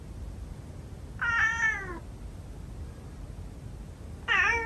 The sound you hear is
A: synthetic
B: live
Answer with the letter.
B